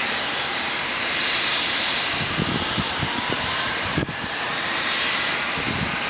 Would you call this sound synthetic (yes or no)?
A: yes